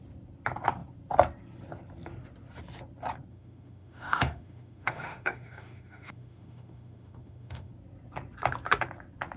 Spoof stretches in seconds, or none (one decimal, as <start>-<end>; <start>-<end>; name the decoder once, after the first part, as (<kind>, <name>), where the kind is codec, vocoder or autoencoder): 3.3-7.7 (autoencoder, DAC-VAE)